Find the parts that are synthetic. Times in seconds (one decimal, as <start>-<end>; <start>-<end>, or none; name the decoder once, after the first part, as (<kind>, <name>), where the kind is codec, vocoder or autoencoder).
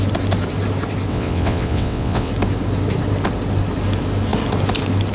1.1-2.3 (vocoder, WaveNeXt)